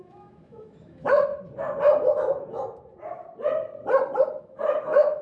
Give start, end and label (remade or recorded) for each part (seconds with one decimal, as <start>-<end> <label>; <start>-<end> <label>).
0.0-1.3 remade; 1.3-4.4 recorded; 4.4-5.2 remade